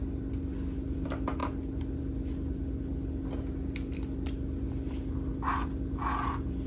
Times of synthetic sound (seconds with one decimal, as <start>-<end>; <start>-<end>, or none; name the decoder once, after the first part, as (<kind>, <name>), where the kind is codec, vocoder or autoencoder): none